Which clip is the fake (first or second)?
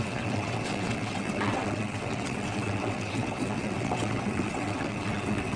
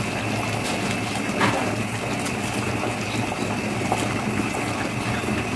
first